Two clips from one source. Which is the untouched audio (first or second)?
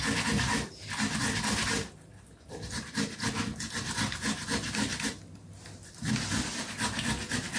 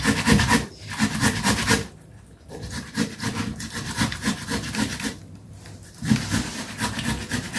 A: first